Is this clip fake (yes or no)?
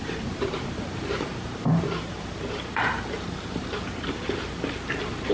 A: yes